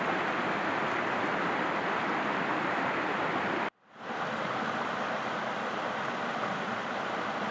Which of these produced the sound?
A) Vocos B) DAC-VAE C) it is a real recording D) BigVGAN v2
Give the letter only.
C